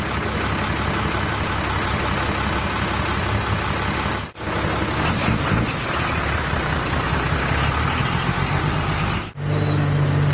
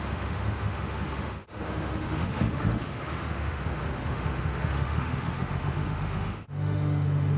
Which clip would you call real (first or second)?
first